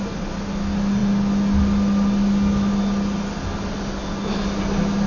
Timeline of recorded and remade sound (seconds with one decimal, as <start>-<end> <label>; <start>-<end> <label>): 0.0-5.1 recorded